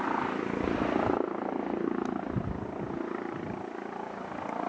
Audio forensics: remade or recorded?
recorded